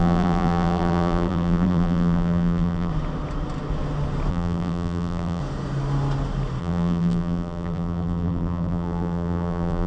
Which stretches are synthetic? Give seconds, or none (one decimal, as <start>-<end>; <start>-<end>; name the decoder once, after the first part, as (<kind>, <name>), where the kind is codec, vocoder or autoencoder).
0.0-2.9 (vocoder, BigVGAN v2); 4.3-5.4; 6.6-9.9